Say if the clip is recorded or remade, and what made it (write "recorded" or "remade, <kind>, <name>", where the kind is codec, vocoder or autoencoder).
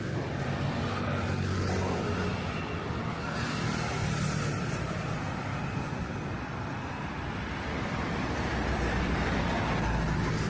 recorded